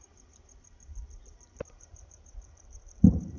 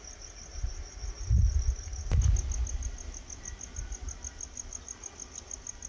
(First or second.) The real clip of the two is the second